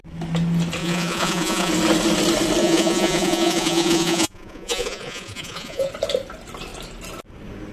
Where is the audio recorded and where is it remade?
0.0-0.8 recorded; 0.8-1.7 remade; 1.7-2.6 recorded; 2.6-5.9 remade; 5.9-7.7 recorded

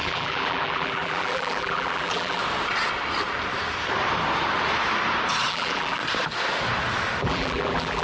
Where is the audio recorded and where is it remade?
0.0-2.4 remade; 2.4-5.5 recorded; 5.5-6.0 remade; 6.0-7.2 recorded; 7.2-8.0 remade